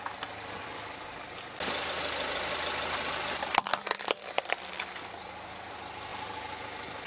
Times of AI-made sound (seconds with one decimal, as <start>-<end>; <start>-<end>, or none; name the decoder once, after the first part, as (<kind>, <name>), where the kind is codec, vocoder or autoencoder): none

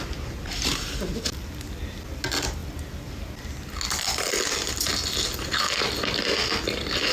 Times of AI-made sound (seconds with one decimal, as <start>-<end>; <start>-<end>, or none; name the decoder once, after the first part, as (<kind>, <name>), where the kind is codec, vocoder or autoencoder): none